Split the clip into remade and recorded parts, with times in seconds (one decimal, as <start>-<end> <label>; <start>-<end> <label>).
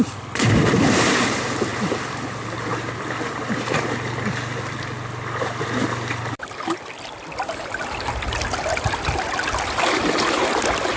0.0-11.0 recorded